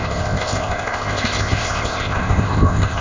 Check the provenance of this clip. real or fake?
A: fake